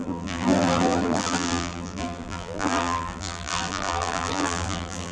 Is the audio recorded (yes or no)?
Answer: no